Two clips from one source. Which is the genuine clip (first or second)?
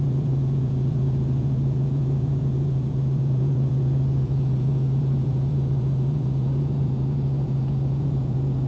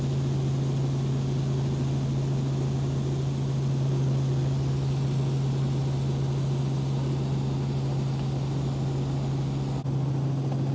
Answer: second